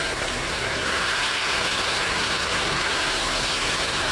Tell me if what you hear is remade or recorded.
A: remade